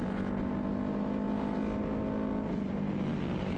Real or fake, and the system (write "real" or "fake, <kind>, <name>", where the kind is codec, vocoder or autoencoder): real